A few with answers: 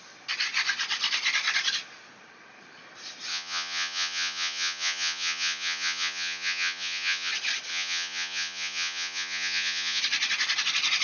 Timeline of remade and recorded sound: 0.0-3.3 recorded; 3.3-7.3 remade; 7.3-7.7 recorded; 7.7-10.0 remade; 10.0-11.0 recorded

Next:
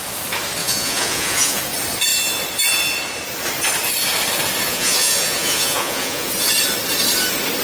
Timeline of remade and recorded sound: 0.0-0.6 recorded; 0.6-1.6 remade; 1.6-4.7 recorded; 4.7-6.3 remade; 6.3-7.6 recorded

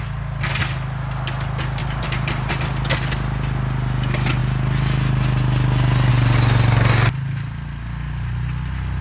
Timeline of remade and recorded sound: 0.0-1.8 recorded; 1.8-2.5 remade; 2.5-9.0 recorded

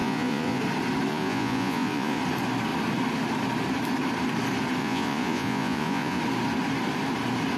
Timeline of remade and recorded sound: 0.0-0.6 remade; 0.6-1.1 recorded; 1.1-2.2 remade; 2.2-4.8 recorded; 4.8-6.2 remade; 6.2-7.6 recorded

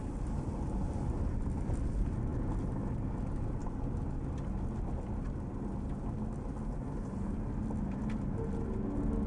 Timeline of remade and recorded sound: 0.0-9.3 recorded

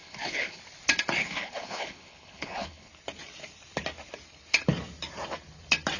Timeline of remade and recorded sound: 0.0-0.6 remade; 0.6-1.2 recorded; 1.2-2.9 remade; 2.9-6.0 recorded